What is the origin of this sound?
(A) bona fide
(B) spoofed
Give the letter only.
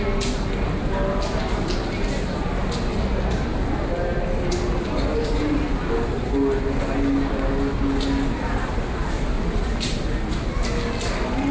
A